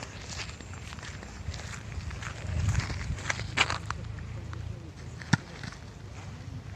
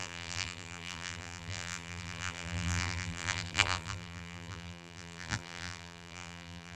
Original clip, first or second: first